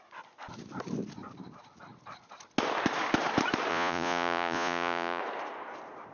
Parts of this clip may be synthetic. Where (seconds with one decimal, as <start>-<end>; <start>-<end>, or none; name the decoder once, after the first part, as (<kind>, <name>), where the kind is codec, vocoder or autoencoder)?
3.7-5.2 (vocoder, Vocos)